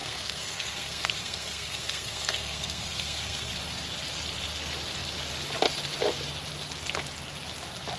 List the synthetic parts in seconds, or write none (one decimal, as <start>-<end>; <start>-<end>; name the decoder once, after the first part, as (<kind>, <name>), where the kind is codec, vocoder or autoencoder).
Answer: 0.0-3.5 (codec, SNAC)